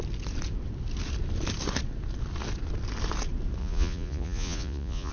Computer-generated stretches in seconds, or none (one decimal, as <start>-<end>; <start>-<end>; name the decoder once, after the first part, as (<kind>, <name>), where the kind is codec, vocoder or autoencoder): 3.6-5.1 (vocoder, Vocos)